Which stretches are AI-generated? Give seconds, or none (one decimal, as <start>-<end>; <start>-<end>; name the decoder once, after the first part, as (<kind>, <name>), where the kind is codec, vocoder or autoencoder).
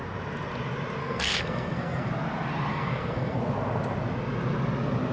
1.0-2.1 (codec, SNAC); 2.7-3.4